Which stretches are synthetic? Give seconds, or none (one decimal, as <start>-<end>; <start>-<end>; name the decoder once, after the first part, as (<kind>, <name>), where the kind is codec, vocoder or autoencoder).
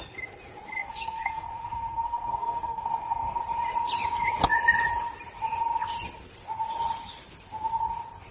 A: 0.8-3.4 (codec, SNAC)